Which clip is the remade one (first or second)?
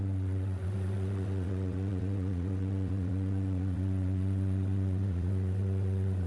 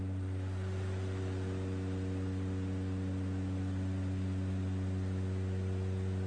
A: first